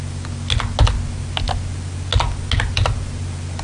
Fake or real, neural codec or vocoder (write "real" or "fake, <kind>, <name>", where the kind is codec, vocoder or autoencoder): real